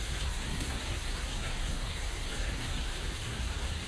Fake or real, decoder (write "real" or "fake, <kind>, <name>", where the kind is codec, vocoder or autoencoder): fake, codec, SNAC